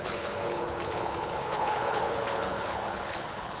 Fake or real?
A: fake